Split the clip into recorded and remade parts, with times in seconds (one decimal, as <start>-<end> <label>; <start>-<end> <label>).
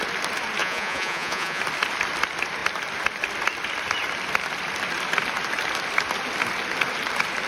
0.0-0.6 recorded; 0.6-1.6 remade; 1.6-7.5 recorded